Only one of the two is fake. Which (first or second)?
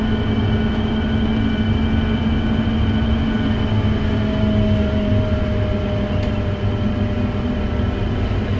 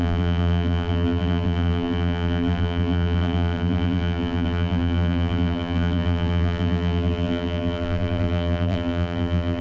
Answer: second